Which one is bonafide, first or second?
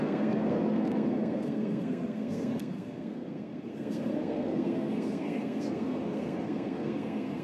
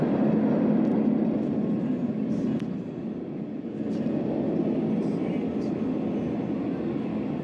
second